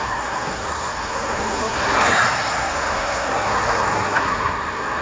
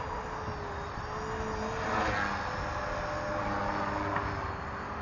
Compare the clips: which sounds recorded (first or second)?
second